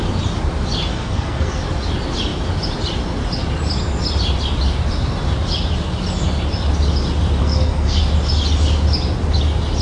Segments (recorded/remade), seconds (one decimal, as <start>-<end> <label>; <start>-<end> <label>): 0.0-0.9 recorded; 0.9-1.6 remade; 1.6-7.4 recorded; 7.4-8.0 remade; 8.0-9.8 recorded